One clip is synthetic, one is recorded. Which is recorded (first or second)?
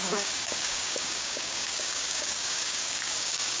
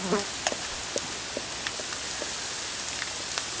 second